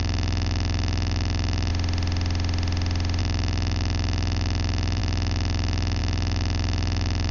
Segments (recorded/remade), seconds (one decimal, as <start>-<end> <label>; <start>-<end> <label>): 0.0-1.7 remade; 1.7-3.2 recorded; 3.2-7.3 remade